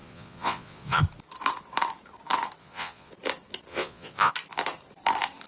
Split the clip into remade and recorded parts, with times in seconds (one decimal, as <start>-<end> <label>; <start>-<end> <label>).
0.0-1.0 remade; 1.0-2.6 recorded; 2.6-3.1 remade; 3.1-3.7 recorded; 3.7-4.3 remade; 4.3-5.5 recorded